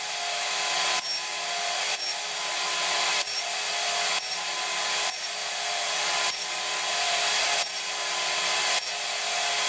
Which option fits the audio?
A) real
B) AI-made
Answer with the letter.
A